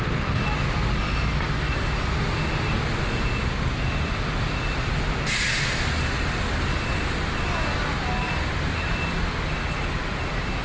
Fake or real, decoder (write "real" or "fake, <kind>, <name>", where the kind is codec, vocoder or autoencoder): real